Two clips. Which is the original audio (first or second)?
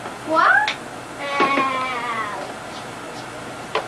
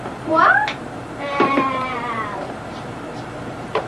first